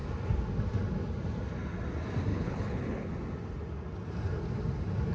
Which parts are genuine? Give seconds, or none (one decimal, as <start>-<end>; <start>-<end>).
0.0-2.3; 3.1-5.1